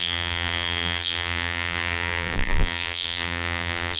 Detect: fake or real fake